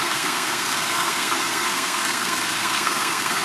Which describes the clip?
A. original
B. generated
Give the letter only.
B